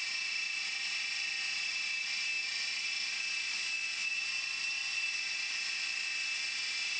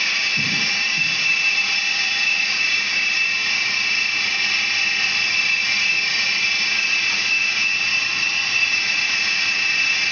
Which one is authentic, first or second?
first